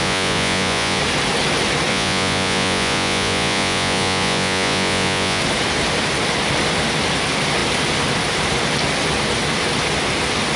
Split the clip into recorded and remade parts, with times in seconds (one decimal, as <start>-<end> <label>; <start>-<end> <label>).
0.0-1.0 remade; 1.0-1.9 recorded; 1.9-5.4 remade; 5.4-10.6 recorded